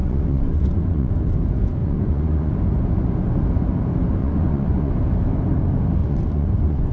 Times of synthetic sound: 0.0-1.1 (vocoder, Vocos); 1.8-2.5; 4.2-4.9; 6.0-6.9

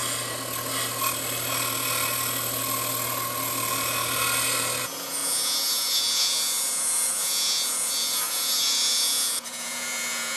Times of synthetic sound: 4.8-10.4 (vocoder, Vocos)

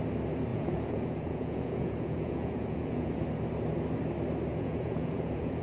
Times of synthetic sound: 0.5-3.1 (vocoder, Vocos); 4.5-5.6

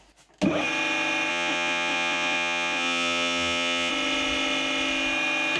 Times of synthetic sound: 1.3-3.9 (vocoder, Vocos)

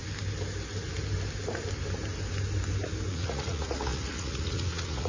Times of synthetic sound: 3.1-5.1 (vocoder, Vocos)

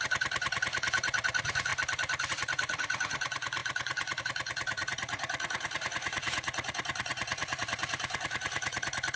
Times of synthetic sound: 0.0-1.7 (vocoder, Vocos); 2.3-9.2

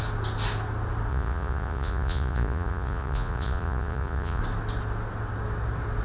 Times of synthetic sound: 1.1-4.4 (vocoder, Vocos)